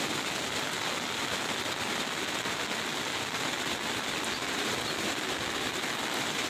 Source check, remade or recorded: recorded